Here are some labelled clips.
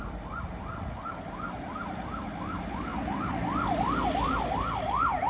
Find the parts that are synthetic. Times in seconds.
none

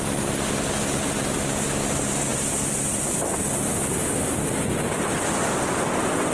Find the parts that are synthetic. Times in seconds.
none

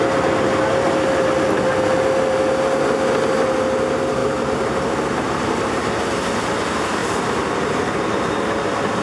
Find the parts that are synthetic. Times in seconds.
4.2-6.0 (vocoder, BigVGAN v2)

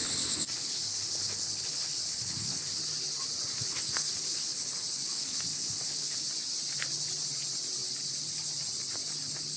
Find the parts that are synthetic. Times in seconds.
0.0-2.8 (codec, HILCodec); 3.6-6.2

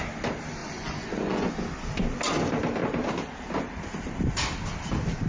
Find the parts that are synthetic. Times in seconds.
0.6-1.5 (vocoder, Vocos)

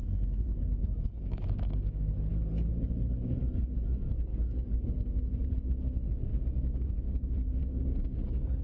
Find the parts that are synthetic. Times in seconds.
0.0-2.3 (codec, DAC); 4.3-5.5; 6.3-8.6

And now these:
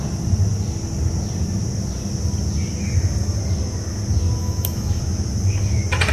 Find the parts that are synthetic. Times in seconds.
4.4-5.0 (autoencoder, DAC-VAE)